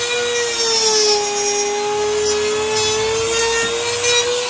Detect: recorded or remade recorded